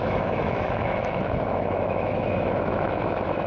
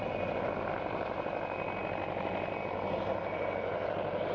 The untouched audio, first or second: second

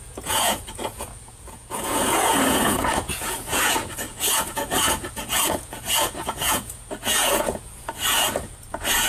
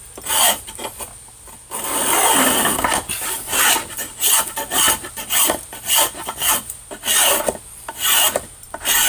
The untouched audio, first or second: second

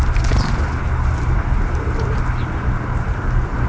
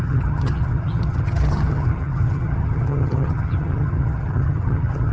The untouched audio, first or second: first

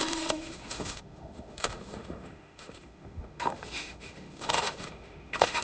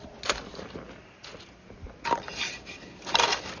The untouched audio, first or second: second